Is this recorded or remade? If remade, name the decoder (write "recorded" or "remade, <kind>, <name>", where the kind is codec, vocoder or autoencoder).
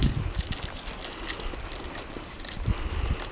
recorded